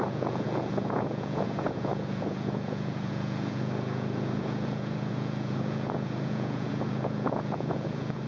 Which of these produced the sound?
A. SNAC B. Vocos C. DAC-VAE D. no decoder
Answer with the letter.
B